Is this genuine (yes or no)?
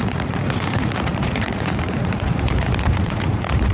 no